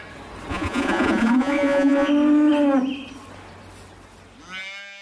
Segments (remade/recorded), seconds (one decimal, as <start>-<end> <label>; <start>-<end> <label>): 0.0-0.5 recorded; 0.5-2.1 remade; 2.1-5.0 recorded